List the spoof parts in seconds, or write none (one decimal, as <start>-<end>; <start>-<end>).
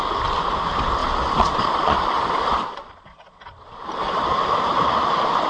1.0-4.3